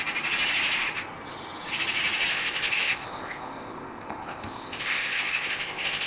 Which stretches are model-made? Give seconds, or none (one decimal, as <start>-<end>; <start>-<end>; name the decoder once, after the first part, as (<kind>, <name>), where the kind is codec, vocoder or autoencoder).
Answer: 2.3-6.1 (codec, ZipCodec)